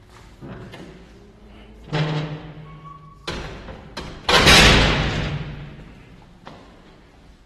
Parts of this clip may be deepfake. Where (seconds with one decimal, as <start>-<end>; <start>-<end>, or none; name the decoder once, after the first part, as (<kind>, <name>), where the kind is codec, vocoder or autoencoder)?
none